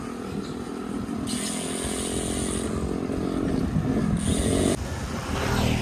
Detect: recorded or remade recorded